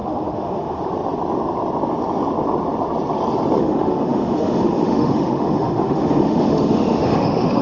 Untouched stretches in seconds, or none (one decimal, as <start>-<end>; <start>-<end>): 0.9-3.6

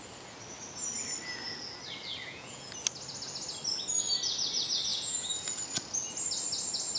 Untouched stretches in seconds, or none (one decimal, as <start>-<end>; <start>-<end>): 0.0-2.2; 2.7-4.9; 5.6-7.0